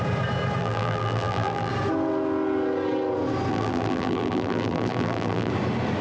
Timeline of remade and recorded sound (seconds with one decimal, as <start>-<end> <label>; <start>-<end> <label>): 0.0-0.6 recorded; 0.6-1.7 remade; 1.7-3.5 recorded; 3.5-5.5 remade; 5.5-6.0 recorded